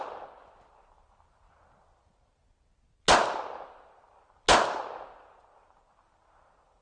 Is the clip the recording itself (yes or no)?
yes